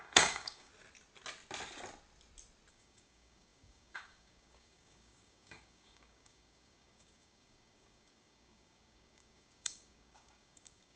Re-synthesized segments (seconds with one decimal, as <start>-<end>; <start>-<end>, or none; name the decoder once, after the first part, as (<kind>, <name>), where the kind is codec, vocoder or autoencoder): 0.0-0.7 (codec, DAC); 2.7-11.0